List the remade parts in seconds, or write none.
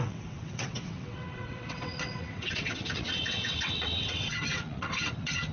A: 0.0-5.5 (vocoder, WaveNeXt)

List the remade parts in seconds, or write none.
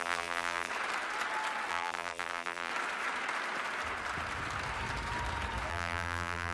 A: 0.0-0.7 (vocoder, BigVGAN v2); 1.7-2.7; 5.7-6.5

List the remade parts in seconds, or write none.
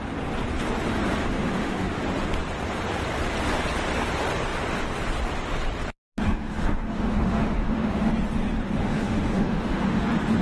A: 1.2-2.0 (autoencoder, DAC-VAE); 6.2-8.1; 8.8-10.0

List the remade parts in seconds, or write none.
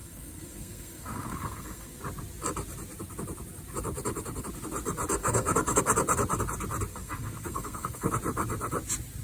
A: 0.0-2.0 (codec, SNAC); 5.2-5.8; 6.9-8.1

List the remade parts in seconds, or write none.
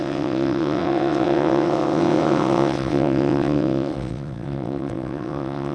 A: 0.0-5.7 (vocoder, WaveNeXt)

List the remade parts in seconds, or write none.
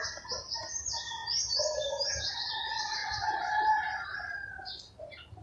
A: none